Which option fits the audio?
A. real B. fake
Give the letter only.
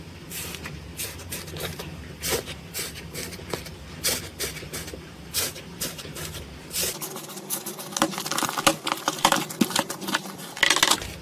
A